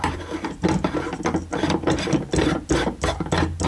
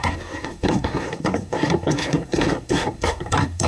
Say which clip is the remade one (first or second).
second